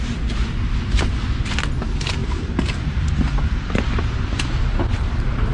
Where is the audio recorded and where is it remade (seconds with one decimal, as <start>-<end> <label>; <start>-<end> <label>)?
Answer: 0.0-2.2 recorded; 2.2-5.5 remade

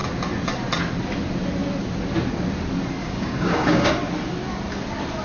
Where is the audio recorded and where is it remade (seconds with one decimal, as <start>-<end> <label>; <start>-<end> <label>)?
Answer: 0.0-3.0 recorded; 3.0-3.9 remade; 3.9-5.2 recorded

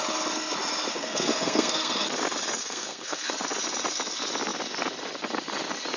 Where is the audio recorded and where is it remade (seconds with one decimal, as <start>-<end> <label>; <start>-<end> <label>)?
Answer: 0.0-0.9 recorded; 0.9-2.1 remade; 2.1-2.6 recorded; 2.6-3.3 remade; 3.3-6.0 recorded

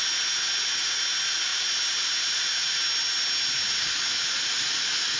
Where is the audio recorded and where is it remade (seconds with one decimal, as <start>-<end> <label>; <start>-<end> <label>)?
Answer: 0.0-5.2 recorded

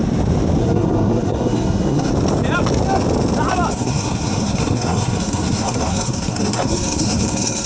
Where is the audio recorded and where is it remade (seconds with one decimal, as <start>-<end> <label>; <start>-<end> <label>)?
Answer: 0.0-0.6 recorded; 0.6-2.1 remade; 2.1-3.7 recorded; 3.7-7.7 remade

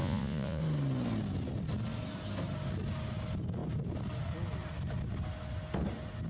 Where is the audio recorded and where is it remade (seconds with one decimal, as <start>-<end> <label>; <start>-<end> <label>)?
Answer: 0.0-0.6 remade; 0.6-6.3 recorded

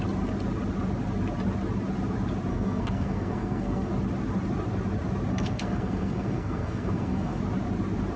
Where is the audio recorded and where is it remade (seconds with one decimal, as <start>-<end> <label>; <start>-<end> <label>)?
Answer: 0.0-2.5 recorded; 2.5-3.9 remade; 3.9-5.3 recorded; 5.3-7.4 remade; 7.4-8.2 recorded